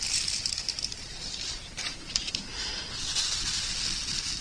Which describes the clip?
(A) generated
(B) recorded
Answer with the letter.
B